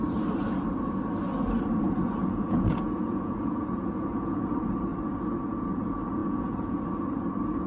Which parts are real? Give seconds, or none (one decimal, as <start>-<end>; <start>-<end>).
0.0-2.2; 4.5-6.2; 6.8-7.7